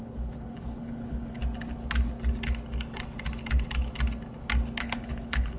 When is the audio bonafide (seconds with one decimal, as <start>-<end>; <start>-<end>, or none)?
1.4-4.8